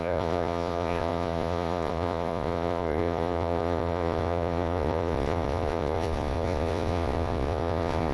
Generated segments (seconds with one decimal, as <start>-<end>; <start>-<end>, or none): 0.0-8.1